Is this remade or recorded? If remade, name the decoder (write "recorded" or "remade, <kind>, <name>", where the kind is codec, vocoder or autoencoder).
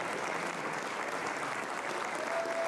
recorded